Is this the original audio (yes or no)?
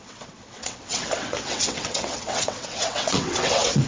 no